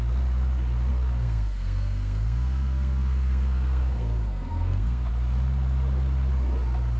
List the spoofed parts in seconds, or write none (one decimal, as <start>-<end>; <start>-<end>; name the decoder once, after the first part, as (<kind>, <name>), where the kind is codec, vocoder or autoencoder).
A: 0.9-5.1 (codec, SNAC)